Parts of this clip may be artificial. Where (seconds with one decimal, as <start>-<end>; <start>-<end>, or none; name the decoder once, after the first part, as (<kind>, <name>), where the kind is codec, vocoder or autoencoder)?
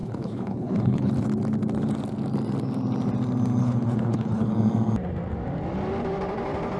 0.0-1.1 (codec, HILCodec); 3.6-4.5